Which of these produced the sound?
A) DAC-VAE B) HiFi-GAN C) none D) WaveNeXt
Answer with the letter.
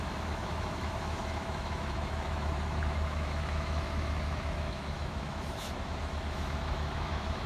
A